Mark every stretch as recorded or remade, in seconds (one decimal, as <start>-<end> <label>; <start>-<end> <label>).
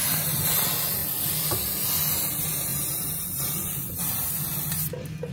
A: 0.0-2.7 recorded; 2.7-4.3 remade; 4.3-5.3 recorded